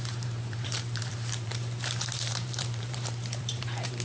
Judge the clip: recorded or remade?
remade